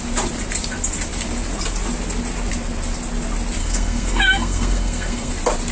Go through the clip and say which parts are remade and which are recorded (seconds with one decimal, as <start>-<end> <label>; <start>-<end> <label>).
0.0-3.6 recorded; 3.6-5.3 remade; 5.3-5.7 recorded